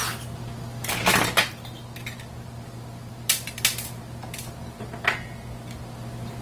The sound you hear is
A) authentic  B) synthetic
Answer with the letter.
A